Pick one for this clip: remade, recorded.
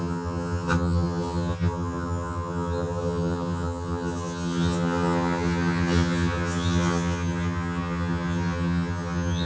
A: remade